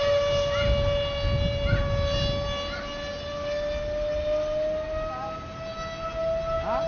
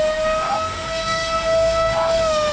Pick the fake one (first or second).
second